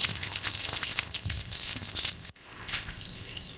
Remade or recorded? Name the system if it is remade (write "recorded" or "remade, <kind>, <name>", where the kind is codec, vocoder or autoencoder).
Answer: remade, codec, ZipCodec